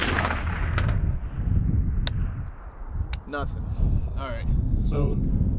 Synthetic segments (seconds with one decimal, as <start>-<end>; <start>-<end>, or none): 0.6-1.2; 4.6-5.6